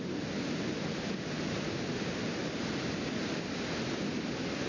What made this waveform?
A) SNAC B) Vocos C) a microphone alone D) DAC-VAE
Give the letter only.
C